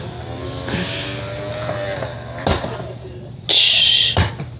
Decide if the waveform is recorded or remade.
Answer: recorded